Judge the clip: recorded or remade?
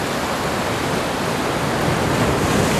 recorded